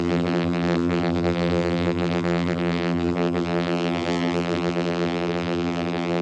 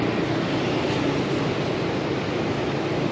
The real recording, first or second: second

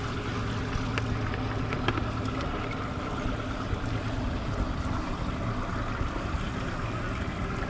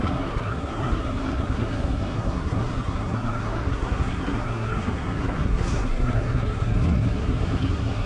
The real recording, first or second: first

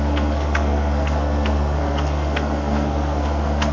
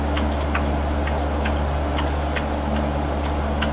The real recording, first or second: second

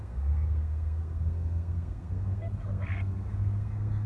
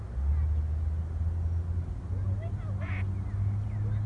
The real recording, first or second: second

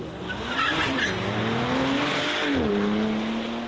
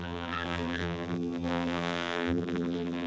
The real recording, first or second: first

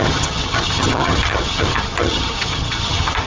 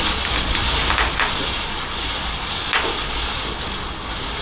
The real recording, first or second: second